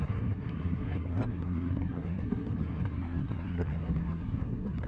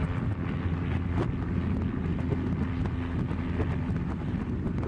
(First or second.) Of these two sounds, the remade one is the first